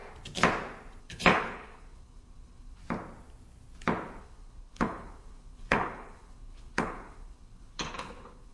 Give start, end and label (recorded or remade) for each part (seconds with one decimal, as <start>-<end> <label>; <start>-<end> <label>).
0.0-1.0 recorded; 1.0-2.8 remade; 2.8-4.2 recorded; 4.2-8.5 remade